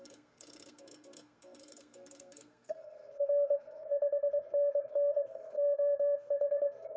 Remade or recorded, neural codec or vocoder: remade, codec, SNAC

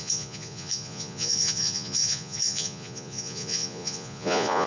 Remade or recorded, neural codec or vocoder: remade, vocoder, Vocos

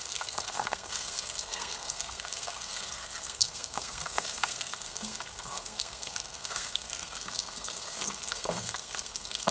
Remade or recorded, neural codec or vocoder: remade, codec, SNAC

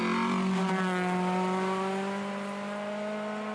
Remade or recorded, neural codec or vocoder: recorded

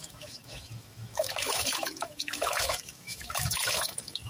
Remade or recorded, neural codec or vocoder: remade, autoencoder, DAC-VAE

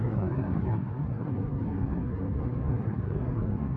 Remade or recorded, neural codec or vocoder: remade, codec, SNAC